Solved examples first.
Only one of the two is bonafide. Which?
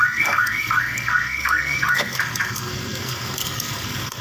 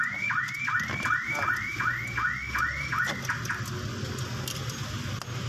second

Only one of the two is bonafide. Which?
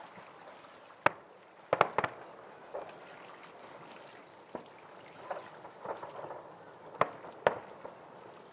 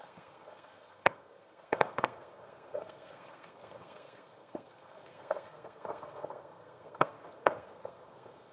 first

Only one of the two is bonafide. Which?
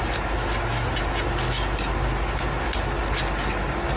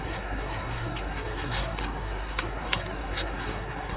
first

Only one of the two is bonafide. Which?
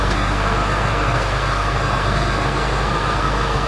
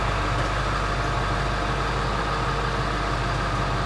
second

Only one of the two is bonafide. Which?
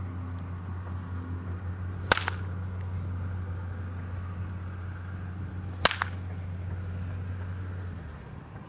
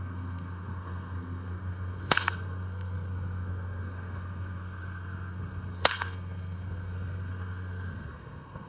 first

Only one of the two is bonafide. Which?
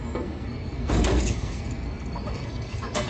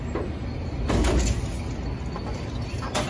second